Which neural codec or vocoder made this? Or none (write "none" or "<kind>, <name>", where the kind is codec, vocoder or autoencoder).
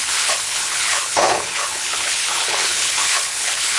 codec, HILCodec